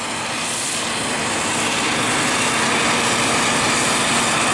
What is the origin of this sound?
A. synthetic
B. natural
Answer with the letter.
B